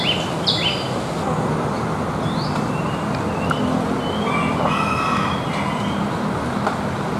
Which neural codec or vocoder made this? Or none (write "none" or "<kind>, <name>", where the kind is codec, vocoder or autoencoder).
none